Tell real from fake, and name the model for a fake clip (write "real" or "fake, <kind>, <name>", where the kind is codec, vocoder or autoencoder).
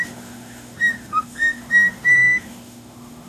fake, autoencoder, DAC-VAE